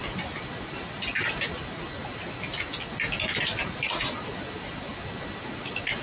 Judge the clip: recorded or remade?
recorded